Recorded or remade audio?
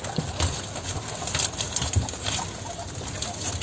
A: recorded